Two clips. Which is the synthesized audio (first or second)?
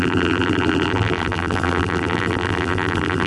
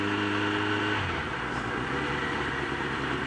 first